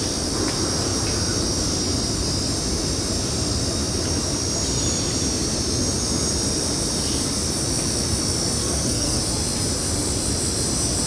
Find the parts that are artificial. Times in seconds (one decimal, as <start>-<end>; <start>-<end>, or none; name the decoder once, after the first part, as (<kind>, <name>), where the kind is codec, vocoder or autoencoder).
8.6-9.2 (codec, SNAC)